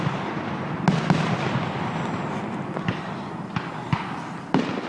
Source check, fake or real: real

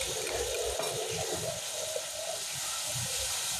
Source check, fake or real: real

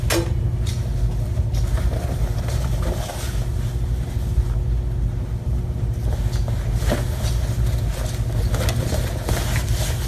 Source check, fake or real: real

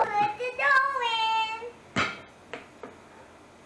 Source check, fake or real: real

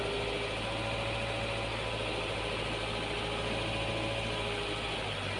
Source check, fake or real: real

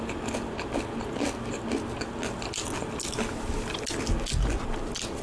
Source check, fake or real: real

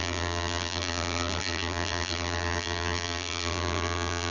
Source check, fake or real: fake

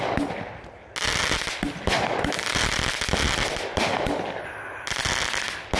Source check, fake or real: real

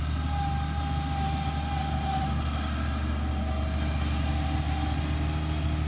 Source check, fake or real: real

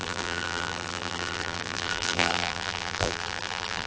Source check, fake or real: fake